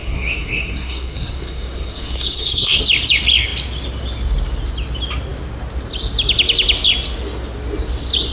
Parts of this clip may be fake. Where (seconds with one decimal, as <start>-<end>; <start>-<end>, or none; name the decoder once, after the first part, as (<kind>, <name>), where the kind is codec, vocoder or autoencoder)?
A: 0.0-2.8 (codec, SNAC)